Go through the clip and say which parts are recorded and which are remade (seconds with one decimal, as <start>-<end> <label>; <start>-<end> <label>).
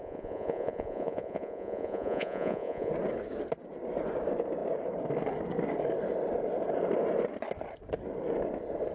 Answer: 0.0-2.9 remade; 2.9-8.9 recorded